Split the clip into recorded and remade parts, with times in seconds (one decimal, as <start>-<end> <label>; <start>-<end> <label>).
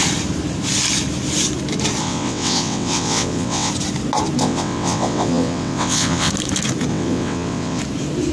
0.0-2.0 recorded; 2.0-3.7 remade; 3.7-4.4 recorded; 4.4-6.3 remade; 6.3-6.9 recorded; 6.9-7.8 remade; 7.8-8.3 recorded